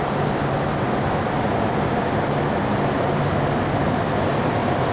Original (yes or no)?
yes